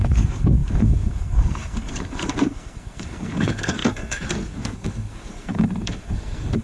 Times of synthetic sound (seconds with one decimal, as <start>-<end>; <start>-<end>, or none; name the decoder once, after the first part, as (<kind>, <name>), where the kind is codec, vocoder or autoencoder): 0.0-6.6 (codec, SNAC)